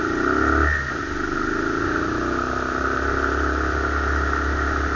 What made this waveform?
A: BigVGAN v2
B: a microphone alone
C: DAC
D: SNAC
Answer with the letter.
B